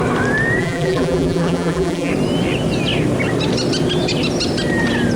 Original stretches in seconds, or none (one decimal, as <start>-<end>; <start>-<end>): 0.0-0.6; 2.1-5.2